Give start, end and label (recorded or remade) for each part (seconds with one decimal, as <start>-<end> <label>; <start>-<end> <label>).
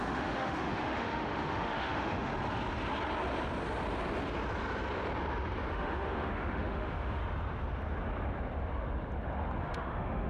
0.0-2.3 remade; 2.3-5.7 recorded; 5.7-7.2 remade; 7.2-9.6 recorded; 9.6-10.3 remade